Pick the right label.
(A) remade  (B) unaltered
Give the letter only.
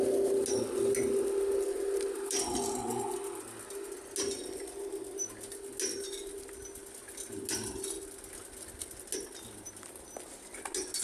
B